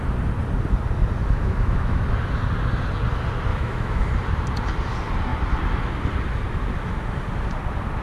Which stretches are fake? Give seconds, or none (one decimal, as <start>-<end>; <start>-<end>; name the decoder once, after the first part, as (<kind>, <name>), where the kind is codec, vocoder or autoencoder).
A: 1.2-2.0 (autoencoder, DAC-VAE); 3.5-4.0